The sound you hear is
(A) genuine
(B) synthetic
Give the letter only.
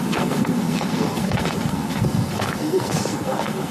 B